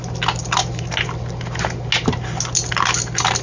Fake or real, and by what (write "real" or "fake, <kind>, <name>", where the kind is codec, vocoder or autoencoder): real